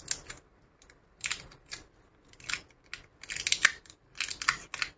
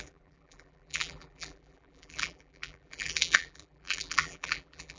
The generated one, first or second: second